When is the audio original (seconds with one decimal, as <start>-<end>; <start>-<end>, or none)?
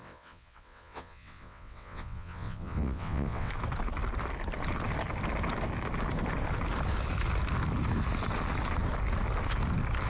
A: 3.5-10.1